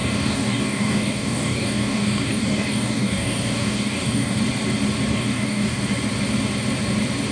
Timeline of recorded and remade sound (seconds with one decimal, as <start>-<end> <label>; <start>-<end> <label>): 0.0-4.4 remade; 4.4-5.1 recorded; 5.1-5.8 remade; 5.8-7.3 recorded